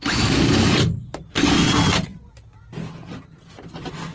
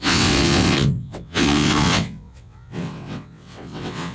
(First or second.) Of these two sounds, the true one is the first